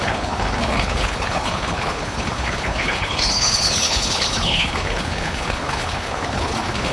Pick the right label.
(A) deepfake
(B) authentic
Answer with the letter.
A